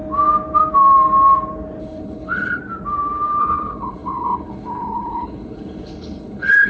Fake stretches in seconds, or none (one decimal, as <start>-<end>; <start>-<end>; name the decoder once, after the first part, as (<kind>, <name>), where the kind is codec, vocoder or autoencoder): 1.8-2.6 (codec, HILCodec); 3.4-6.7